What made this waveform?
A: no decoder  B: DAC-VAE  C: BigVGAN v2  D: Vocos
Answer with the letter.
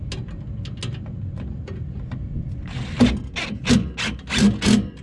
A